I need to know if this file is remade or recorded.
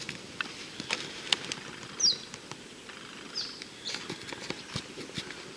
recorded